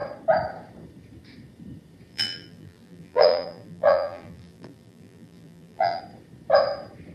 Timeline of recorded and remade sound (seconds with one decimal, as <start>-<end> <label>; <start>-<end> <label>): 0.0-2.1 recorded; 2.1-6.0 remade; 6.0-7.1 recorded